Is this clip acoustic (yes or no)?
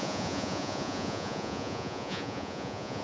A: no